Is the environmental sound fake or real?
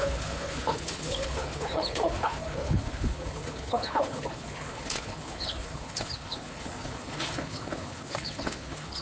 fake